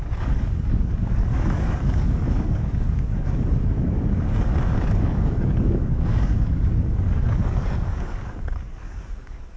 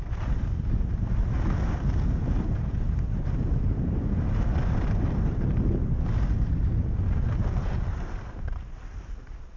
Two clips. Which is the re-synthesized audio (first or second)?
first